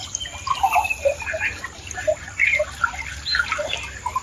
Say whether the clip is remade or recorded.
recorded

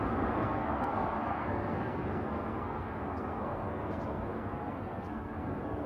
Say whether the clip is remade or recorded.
remade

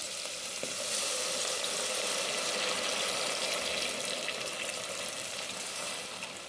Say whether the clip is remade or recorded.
recorded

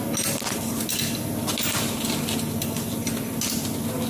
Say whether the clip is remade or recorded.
recorded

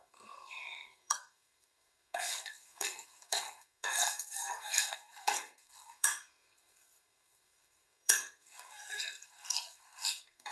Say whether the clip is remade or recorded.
remade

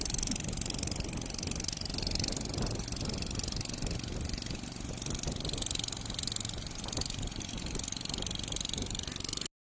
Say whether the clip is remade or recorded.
recorded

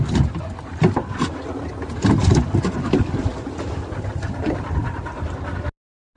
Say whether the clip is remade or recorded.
recorded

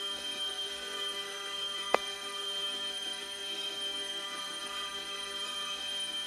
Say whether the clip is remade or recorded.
remade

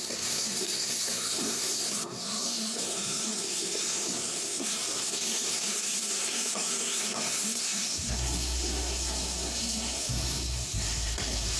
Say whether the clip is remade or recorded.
remade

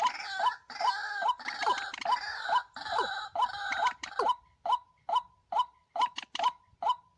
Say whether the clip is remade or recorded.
recorded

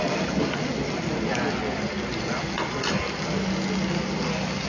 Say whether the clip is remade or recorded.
recorded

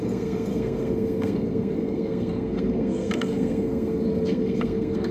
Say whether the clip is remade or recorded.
remade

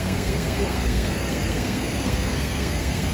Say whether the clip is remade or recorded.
remade